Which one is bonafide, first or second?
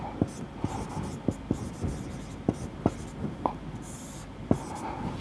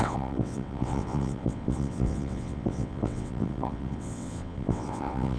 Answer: first